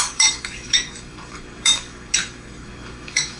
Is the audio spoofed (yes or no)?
yes